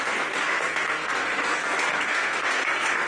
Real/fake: fake